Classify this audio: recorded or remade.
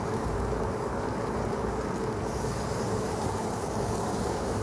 remade